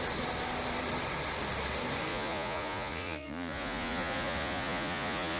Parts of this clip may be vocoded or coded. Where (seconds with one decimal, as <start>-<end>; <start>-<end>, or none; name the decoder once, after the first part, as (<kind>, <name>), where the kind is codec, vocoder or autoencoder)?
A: 2.1-5.4 (vocoder, Vocos)